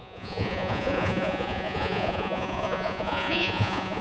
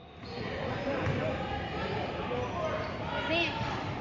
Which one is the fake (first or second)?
first